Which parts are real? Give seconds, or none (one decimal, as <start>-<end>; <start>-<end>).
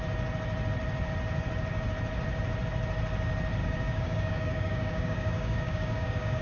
0.0-3.6